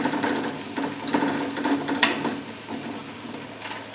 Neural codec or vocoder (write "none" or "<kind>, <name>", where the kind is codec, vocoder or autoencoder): none